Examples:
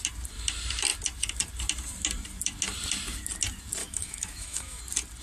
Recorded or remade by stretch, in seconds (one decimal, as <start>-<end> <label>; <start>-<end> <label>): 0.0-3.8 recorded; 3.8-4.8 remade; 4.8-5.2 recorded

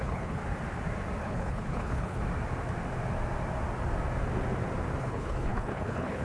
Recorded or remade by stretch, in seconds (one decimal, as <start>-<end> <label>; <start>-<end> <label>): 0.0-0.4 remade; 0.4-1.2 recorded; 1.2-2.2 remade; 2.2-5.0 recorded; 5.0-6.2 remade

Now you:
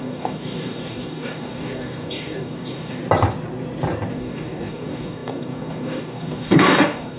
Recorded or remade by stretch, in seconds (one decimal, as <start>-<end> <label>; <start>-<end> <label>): 0.0-3.0 remade; 3.0-4.1 recorded; 4.1-7.2 remade

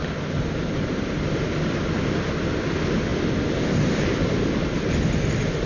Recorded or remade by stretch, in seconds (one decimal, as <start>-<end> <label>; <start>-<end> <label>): 0.0-5.7 recorded

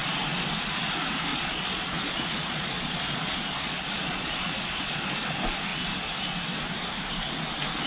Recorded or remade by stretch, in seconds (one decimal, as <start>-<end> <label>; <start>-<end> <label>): 0.0-1.3 recorded; 1.3-5.1 remade; 5.1-7.9 recorded